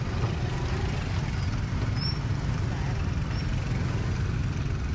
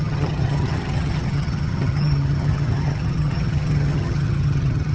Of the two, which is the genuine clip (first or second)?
first